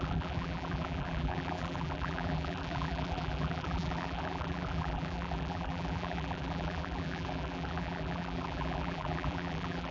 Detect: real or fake fake